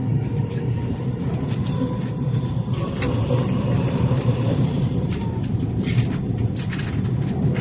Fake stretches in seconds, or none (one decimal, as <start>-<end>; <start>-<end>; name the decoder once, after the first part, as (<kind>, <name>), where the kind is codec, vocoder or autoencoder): 0.0-1.8 (vocoder, BigVGAN v2); 3.4-5.9